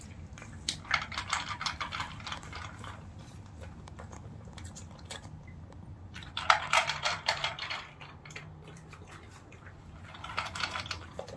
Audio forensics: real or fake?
fake